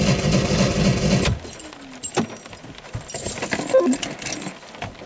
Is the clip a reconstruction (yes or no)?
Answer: no